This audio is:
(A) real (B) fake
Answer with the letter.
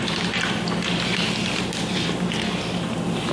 A